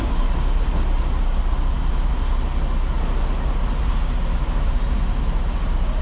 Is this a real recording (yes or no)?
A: yes